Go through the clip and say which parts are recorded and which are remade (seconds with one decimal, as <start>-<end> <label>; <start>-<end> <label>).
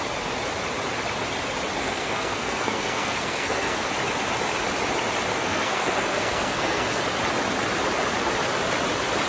0.0-1.8 recorded; 1.8-3.9 remade; 3.9-5.3 recorded; 5.3-7.0 remade; 7.0-9.3 recorded